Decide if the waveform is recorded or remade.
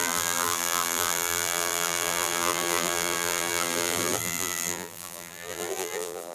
remade